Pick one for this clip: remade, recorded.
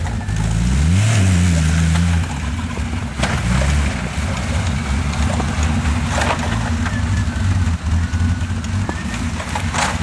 recorded